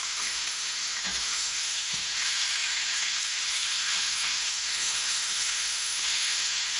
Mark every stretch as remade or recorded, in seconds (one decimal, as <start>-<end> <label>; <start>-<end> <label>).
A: 0.0-6.8 remade